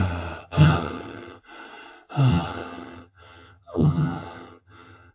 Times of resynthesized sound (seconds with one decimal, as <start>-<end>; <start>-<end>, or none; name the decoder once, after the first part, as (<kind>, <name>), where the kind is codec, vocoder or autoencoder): 0.4-1.4 (vocoder, HiFi-GAN); 2.3-5.1